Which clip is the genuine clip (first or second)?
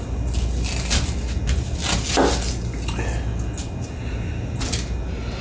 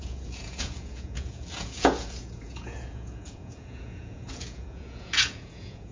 first